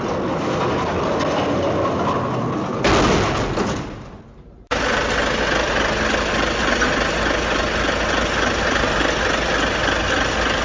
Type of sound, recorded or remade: recorded